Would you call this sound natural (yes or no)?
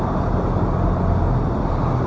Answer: yes